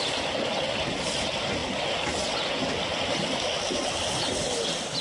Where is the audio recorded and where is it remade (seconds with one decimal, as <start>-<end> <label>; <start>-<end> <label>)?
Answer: 0.0-5.0 recorded